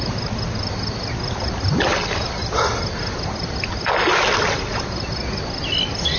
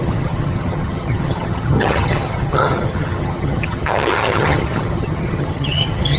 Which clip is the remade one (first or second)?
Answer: second